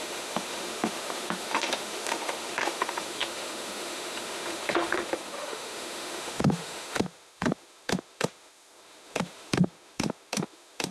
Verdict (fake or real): fake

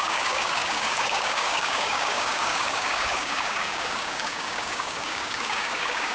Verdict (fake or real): fake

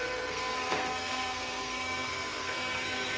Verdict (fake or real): fake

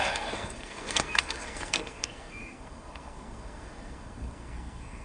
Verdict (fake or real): fake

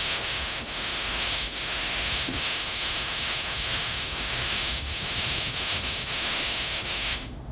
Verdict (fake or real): fake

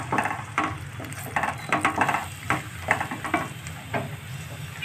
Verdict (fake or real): real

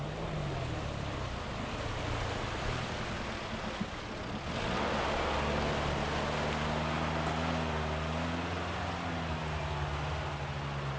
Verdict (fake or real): real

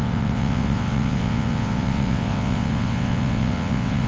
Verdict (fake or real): fake